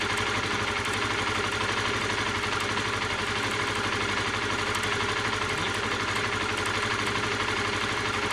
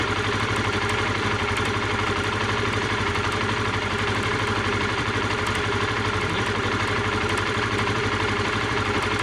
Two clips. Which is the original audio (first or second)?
first